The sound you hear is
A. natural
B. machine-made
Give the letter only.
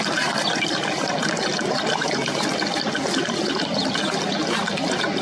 A